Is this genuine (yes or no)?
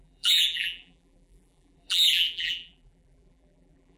no